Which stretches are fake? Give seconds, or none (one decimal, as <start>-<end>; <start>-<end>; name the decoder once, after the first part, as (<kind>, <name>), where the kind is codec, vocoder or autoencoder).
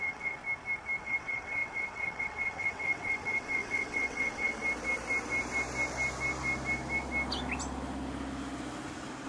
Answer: 0.0-0.4 (vocoder, WaveNeXt); 1.0-4.6